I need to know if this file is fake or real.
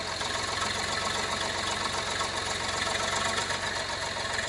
real